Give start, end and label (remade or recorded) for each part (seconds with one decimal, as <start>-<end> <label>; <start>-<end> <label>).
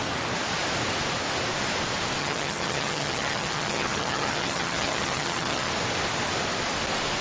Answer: 0.0-2.2 recorded; 2.2-5.7 remade; 5.7-7.2 recorded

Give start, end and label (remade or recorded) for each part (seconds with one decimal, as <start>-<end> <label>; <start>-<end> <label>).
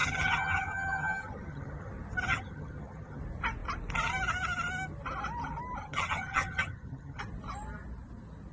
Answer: 0.0-1.9 remade; 1.9-2.3 recorded; 2.3-3.2 remade; 3.2-5.8 recorded; 5.8-7.2 remade; 7.2-8.5 recorded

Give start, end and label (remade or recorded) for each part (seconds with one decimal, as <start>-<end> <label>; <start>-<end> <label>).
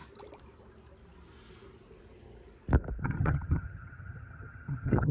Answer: 0.0-3.0 recorded; 3.0-5.1 remade